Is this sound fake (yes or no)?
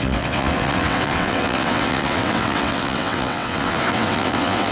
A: yes